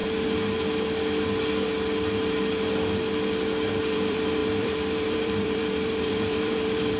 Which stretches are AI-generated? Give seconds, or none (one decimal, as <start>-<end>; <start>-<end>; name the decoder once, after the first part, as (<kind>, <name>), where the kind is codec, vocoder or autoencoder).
3.7-7.0 (vocoder, BigVGAN v2)